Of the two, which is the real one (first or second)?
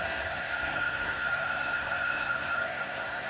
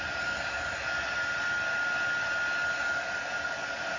second